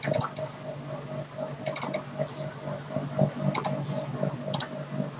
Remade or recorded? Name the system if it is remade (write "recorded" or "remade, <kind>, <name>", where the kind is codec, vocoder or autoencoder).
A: recorded